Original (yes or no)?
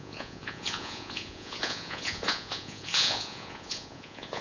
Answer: no